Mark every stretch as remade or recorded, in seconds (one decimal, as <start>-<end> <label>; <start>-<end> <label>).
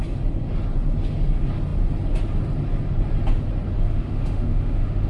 0.0-3.9 recorded; 3.9-5.1 remade